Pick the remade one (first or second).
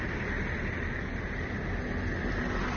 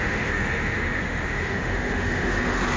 second